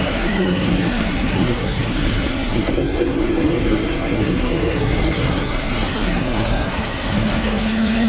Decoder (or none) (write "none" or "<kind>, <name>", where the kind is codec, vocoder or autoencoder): codec, SNAC